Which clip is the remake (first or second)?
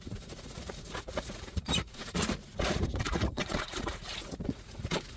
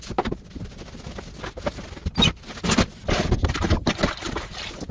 first